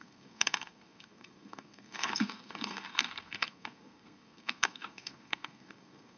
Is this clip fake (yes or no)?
yes